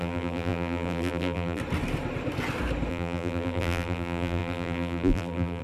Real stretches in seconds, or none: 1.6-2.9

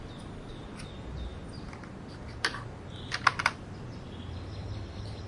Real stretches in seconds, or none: 0.0-5.3

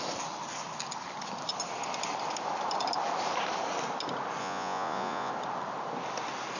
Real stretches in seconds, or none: 0.0-4.4; 5.3-6.6

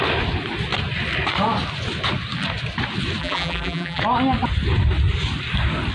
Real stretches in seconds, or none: 0.0-3.2; 4.0-5.9

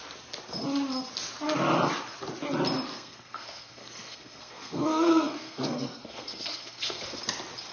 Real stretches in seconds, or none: 0.0-2.9; 7.2-7.7

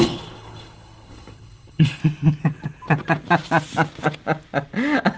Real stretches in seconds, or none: 2.0-5.2

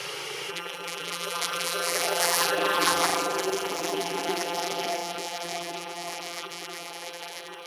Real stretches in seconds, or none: 0.0-0.5